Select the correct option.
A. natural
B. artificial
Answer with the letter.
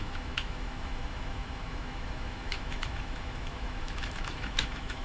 B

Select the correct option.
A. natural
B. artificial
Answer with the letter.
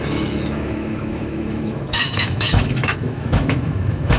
B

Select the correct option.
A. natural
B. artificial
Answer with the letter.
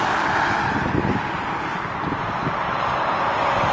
A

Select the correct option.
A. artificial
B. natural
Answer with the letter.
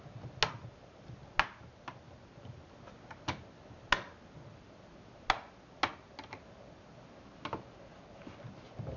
B